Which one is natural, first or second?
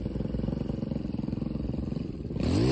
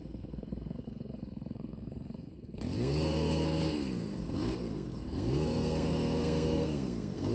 first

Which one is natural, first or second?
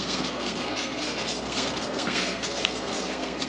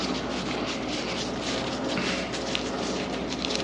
second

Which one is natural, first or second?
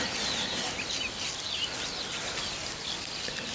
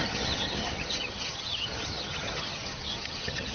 first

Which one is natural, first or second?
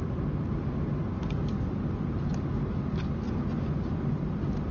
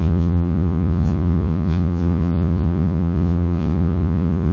first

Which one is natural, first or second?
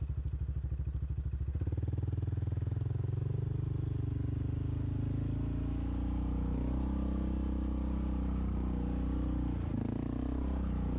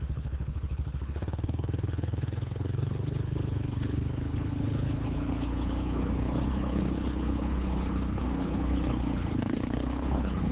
first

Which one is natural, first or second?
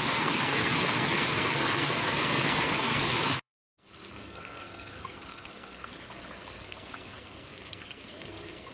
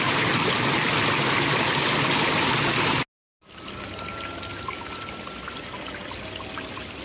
second